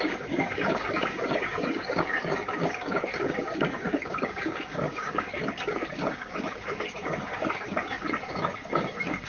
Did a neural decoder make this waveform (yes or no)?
yes